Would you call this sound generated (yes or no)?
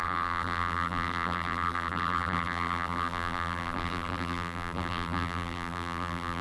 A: yes